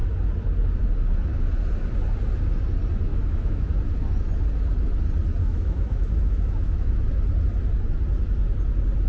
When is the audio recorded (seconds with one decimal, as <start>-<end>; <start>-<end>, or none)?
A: 0.0-3.1; 3.7-5.4; 6.9-9.1